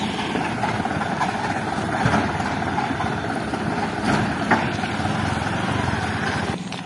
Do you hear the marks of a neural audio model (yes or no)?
no